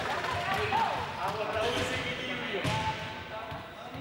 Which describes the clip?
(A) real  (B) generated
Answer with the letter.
A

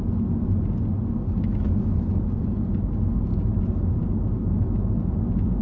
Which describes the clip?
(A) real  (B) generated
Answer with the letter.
A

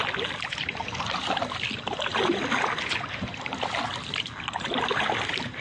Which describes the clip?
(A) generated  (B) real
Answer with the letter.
B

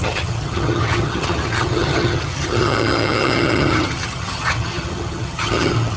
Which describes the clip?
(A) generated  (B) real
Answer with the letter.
A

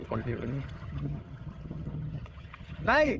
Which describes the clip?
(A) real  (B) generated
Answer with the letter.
B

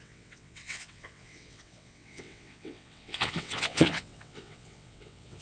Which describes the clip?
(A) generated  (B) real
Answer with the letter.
A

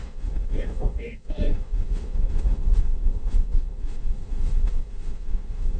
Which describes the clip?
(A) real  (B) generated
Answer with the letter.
B